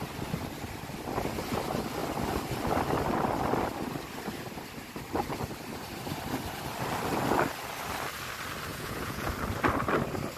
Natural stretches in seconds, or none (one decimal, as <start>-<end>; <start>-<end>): 0.0-8.7; 9.3-10.4